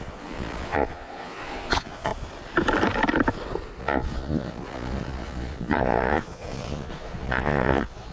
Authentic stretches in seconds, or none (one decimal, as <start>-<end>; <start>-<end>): 2.1-3.8